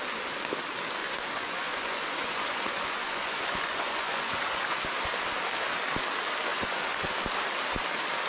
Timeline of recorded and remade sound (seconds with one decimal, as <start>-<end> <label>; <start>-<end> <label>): 0.0-1.0 recorded; 1.0-4.8 remade; 4.8-6.5 recorded; 6.5-7.1 remade; 7.1-8.3 recorded